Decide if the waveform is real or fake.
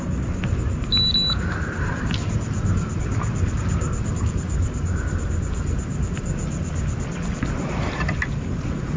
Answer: real